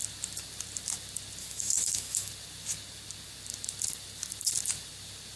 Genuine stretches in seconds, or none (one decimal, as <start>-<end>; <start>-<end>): 0.0-1.4; 2.3-5.4